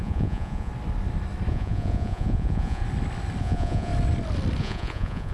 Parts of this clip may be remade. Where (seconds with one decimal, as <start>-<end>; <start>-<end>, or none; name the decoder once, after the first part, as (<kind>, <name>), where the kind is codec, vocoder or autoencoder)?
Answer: 0.0-0.7 (vocoder, Vocos); 1.5-2.8; 3.4-3.9; 4.6-5.3